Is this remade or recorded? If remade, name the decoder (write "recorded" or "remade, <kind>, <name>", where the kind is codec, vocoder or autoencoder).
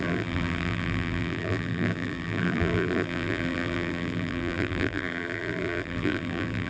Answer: remade, vocoder, BigVGAN v2